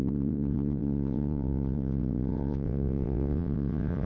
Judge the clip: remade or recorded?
remade